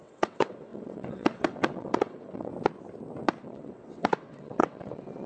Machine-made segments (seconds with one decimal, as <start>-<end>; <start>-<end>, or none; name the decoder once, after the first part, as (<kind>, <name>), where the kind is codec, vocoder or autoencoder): 0.0-2.5 (vocoder, WaveNeXt); 3.4-5.3